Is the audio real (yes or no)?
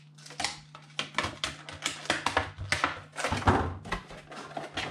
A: yes